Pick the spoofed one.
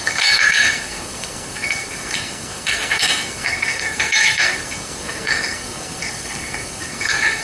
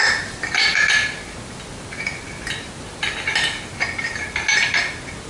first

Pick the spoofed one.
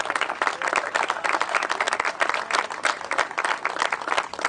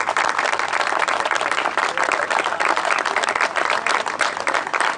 second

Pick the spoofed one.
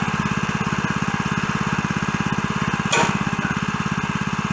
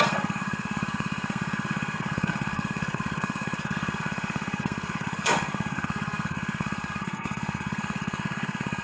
second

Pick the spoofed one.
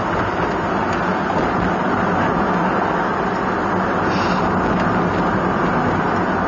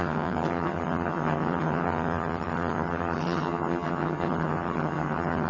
second